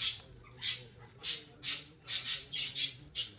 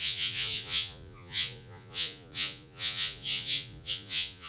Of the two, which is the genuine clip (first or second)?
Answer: first